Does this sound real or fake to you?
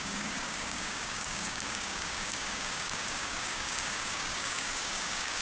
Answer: fake